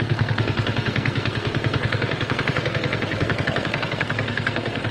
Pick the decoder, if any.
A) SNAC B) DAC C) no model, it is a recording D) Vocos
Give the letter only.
A